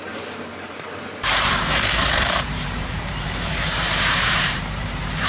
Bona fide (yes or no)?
no